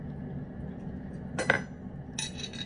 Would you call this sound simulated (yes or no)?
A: no